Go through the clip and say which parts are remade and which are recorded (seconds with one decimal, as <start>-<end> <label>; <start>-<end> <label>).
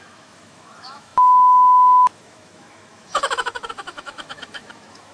0.0-5.1 remade